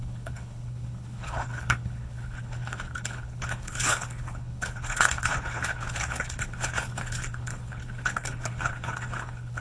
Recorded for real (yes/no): no